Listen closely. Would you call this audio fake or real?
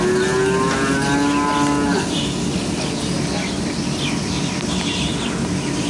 real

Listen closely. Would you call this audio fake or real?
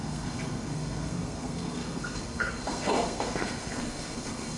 fake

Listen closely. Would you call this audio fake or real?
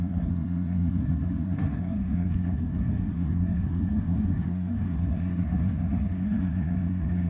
fake